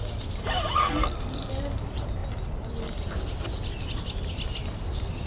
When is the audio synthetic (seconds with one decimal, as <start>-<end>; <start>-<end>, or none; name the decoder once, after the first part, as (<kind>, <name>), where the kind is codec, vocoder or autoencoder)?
0.8-1.5 (codec, SNAC)